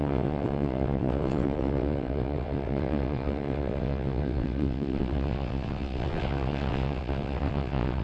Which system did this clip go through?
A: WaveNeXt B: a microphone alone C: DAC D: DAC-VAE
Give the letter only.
A